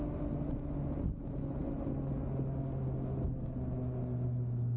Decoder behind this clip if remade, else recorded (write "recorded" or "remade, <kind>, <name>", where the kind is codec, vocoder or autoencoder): recorded